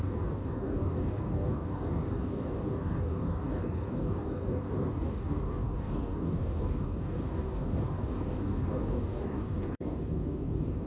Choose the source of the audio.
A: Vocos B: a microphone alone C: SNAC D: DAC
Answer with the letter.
D